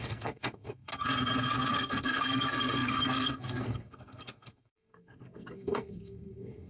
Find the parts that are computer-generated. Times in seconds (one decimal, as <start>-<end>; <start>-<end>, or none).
0.0-0.9; 1.7-6.7